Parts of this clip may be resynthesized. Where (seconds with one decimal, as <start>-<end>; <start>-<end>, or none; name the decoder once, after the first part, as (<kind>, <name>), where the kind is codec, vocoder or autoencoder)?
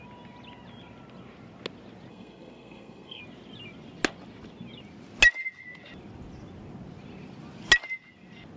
2.1-3.2 (codec, SNAC)